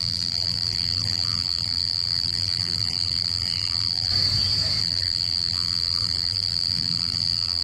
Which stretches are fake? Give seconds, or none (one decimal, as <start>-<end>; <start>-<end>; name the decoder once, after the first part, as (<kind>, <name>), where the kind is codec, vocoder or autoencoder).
0.0-4.1 (vocoder, BigVGAN v2); 4.8-7.6